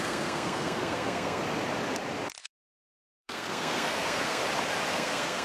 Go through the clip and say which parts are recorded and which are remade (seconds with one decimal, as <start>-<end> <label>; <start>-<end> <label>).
0.0-1.4 remade; 1.4-2.4 recorded; 2.4-4.4 remade; 4.4-4.9 recorded; 4.9-5.4 remade